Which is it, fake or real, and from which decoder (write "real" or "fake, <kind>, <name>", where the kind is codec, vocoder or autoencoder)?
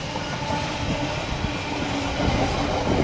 real